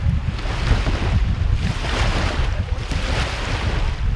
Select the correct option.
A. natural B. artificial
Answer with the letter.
A